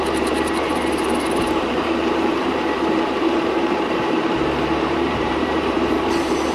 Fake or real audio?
fake